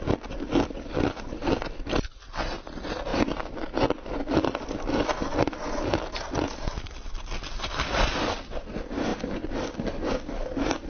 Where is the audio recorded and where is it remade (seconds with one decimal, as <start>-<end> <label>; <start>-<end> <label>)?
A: 0.0-10.9 recorded